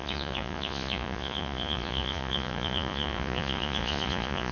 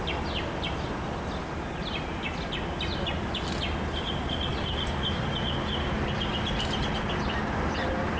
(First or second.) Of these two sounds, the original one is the second